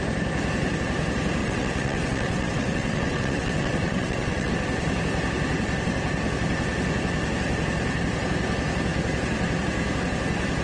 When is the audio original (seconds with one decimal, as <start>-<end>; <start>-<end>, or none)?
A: 0.0-1.4; 4.5-10.6